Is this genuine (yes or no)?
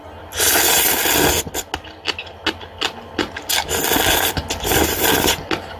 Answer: yes